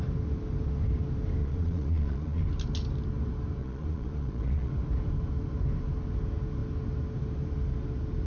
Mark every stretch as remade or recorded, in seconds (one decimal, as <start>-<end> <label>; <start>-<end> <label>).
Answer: 0.0-1.4 recorded; 1.4-2.4 remade; 2.4-3.6 recorded; 3.6-4.7 remade; 4.7-8.3 recorded